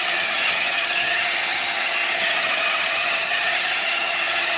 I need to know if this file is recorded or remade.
remade